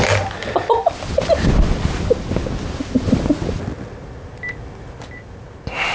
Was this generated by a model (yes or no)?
no